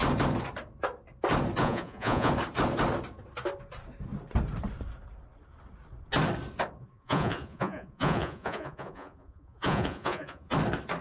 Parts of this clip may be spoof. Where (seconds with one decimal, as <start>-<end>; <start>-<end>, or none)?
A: 1.6-2.3; 6.8-10.5